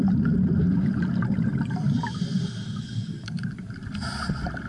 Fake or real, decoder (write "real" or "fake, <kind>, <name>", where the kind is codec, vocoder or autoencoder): real